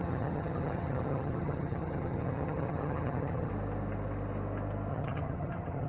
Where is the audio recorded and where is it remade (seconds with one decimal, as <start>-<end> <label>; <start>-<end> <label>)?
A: 0.0-3.5 remade; 3.5-4.9 recorded; 4.9-5.9 remade